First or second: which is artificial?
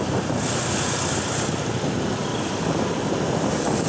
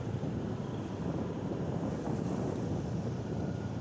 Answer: second